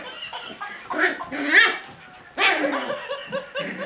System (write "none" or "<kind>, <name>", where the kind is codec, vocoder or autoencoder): none